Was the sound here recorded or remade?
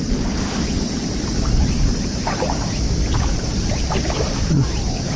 recorded